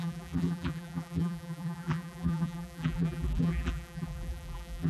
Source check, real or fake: fake